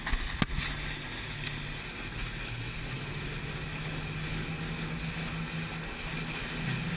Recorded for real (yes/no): yes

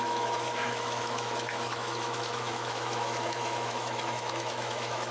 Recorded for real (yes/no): no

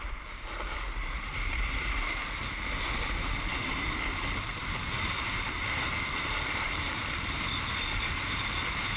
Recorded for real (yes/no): no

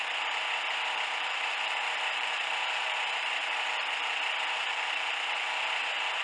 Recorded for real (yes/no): no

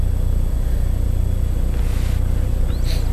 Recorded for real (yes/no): yes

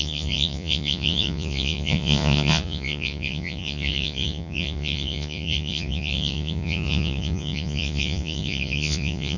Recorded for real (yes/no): no